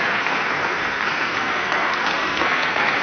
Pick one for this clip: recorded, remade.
remade